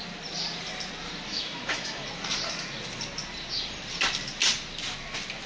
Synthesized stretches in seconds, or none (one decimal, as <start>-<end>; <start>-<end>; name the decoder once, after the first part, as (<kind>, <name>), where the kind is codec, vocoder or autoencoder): 1.3-2.1 (autoencoder, DAC-VAE)